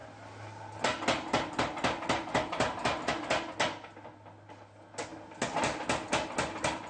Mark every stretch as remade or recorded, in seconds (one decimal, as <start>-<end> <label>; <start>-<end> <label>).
0.0-6.9 recorded